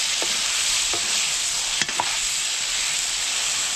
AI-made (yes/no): no